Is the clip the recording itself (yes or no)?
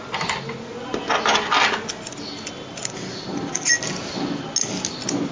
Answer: yes